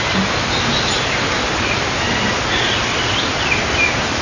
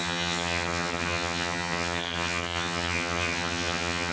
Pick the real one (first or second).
first